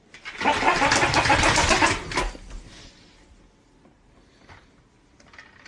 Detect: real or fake real